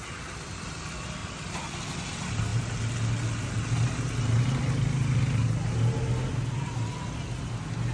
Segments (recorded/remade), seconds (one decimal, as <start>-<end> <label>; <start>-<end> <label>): 0.0-7.9 recorded